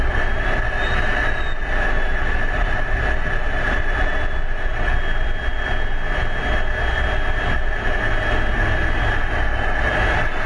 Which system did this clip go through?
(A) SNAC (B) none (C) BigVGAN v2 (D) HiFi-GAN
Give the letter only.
B